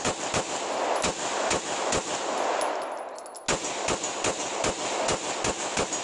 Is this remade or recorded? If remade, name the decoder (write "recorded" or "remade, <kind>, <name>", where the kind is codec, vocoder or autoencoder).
recorded